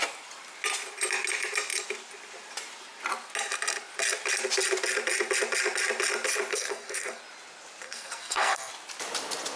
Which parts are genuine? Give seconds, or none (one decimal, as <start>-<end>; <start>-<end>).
0.0-6.5; 7.2-7.8; 8.7-9.6